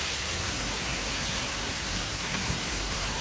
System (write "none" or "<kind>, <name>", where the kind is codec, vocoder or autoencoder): codec, SNAC